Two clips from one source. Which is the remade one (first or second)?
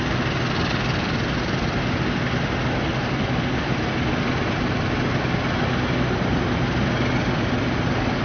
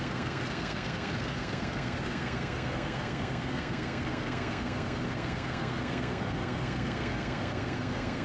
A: second